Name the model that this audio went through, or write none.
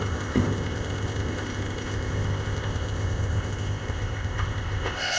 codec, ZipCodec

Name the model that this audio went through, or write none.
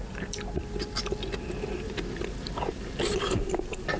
none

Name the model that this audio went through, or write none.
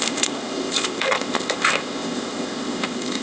codec, ZipCodec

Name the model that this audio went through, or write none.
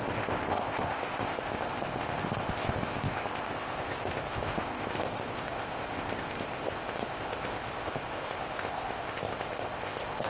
codec, ZipCodec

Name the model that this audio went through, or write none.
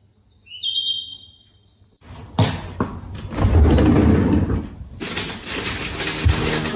none